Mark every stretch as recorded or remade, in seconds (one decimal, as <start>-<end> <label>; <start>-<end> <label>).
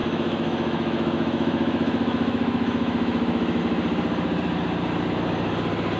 0.0-3.6 remade; 3.6-6.0 recorded